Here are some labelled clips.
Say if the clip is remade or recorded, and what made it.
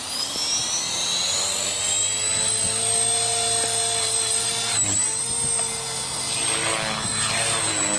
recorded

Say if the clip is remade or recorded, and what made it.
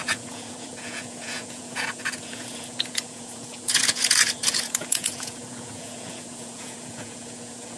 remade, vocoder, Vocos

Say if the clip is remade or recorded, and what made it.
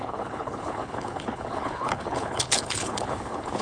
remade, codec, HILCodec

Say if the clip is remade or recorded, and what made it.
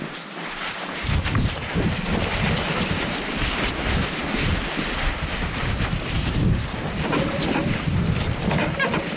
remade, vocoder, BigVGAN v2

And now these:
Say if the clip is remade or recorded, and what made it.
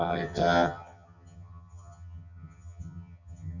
remade, vocoder, HiFi-GAN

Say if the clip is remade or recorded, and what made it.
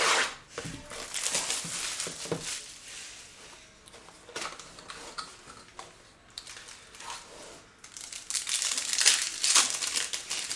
recorded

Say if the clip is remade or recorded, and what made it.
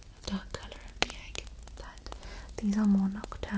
recorded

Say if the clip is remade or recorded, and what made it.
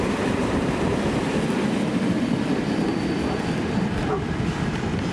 remade, vocoder, BigVGAN v2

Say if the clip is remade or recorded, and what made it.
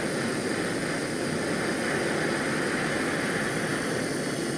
recorded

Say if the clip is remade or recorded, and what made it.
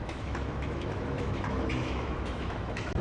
remade, autoencoder, DAC-VAE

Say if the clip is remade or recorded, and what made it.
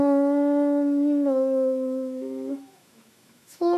remade, autoencoder, DAC-VAE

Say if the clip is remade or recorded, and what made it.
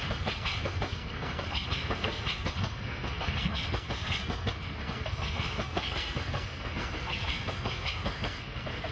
remade, codec, SNAC